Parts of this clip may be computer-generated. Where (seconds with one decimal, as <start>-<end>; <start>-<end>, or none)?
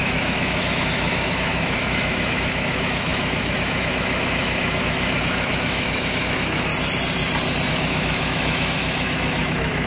0.0-6.7; 7.7-9.9